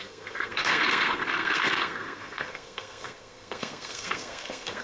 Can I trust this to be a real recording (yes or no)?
no